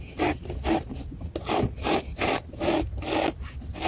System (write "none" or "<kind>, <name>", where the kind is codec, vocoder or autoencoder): none